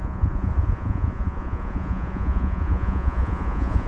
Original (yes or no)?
no